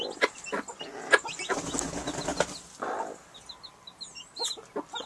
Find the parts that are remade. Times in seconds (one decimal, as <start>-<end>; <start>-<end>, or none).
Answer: none